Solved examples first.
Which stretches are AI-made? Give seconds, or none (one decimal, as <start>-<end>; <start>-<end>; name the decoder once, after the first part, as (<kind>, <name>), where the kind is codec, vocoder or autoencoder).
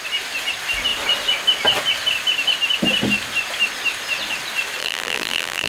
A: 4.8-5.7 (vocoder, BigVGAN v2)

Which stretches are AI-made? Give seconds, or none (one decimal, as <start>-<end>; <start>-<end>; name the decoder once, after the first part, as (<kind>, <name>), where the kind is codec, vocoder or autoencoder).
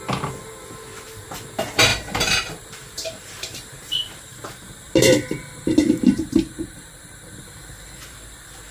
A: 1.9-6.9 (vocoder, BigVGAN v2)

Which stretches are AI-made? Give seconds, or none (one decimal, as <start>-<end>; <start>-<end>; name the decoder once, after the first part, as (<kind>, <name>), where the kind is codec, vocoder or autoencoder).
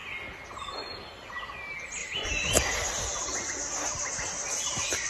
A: none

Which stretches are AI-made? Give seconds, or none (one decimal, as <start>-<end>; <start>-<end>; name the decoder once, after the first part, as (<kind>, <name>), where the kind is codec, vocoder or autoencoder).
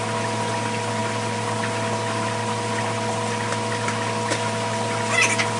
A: none